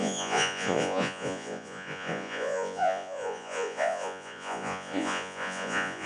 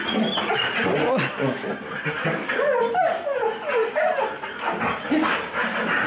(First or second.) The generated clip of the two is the first